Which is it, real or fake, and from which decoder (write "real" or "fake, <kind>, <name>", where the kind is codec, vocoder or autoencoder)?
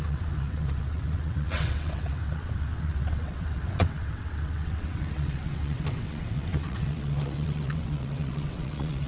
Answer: fake, vocoder, WaveNeXt